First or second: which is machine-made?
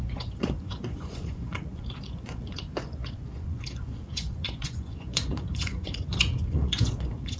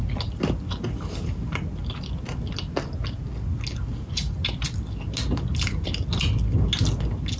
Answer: first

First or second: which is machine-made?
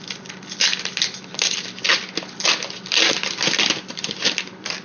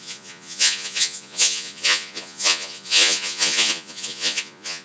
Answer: second